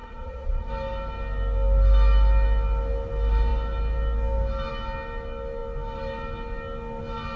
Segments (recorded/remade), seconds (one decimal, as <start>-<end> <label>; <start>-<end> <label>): 0.0-0.7 remade; 0.7-7.4 recorded